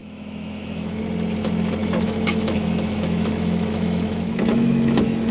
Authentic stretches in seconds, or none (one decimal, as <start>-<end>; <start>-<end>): 1.0-1.8

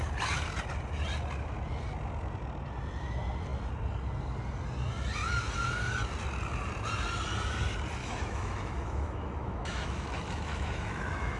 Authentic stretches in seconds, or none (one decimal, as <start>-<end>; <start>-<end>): 0.0-8.0

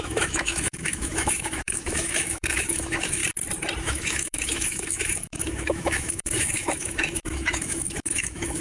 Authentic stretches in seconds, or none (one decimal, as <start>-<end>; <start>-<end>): 3.2-3.8

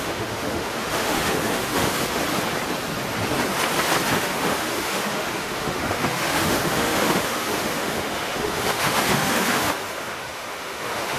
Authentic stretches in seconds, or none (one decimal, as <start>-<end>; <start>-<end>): 2.2-4.1

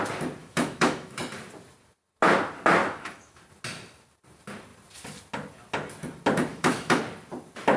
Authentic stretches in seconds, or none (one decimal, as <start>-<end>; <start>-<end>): 0.0-0.4; 1.2-2.8; 3.4-6.5; 7.0-7.8